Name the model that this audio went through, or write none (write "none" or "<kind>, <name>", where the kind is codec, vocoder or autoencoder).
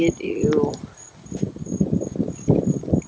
none